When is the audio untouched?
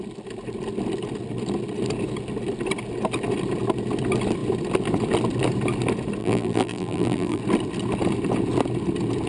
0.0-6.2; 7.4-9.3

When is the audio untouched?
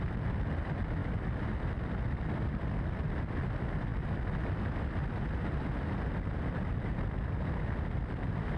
0.0-8.6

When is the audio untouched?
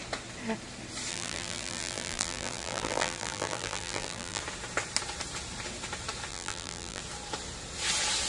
0.0-1.1; 4.4-6.3; 7.0-8.3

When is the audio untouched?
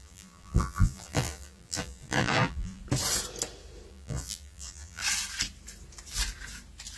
2.8-3.9; 5.0-7.0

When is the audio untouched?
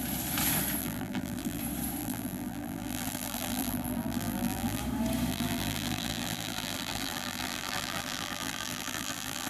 0.0-0.8; 1.6-2.0; 4.8-5.3